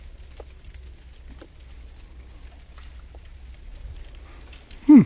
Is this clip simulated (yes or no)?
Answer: no